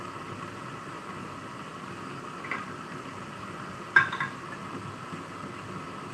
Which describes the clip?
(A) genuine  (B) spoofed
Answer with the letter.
A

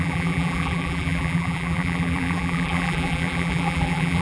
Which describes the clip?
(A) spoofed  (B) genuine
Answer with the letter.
A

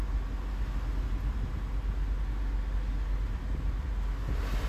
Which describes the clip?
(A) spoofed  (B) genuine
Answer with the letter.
B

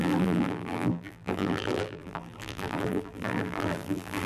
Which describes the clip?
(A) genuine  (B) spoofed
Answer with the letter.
B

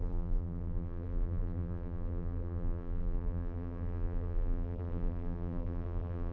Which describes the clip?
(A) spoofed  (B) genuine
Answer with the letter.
A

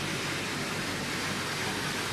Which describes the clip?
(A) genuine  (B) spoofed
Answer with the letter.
A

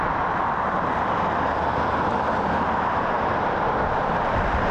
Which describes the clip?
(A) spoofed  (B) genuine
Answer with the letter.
A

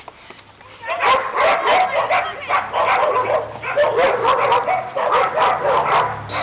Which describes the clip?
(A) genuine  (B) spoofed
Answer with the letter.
A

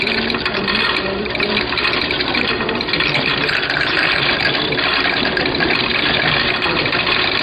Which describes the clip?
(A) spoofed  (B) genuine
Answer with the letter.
A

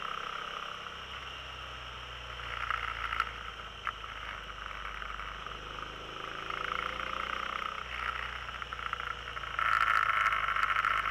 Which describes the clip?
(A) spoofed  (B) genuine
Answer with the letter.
B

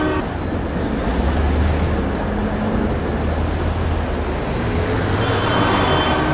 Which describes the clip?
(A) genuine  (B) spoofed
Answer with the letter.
A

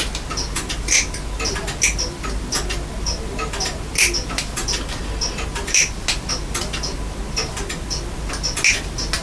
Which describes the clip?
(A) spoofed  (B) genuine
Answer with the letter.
B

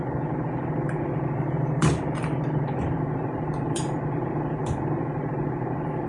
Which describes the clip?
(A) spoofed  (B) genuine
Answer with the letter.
A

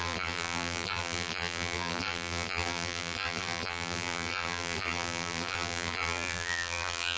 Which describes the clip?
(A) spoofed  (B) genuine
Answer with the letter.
A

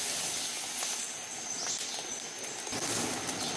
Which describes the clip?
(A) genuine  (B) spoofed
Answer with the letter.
A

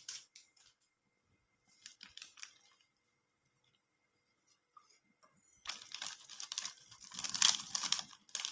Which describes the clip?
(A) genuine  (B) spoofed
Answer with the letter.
A